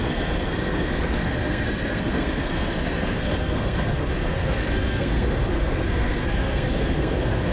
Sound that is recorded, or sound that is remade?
remade